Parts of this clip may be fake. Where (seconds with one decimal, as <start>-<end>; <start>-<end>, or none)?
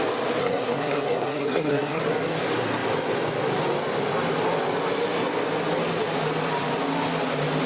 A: 0.4-2.0